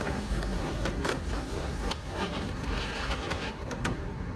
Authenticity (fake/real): fake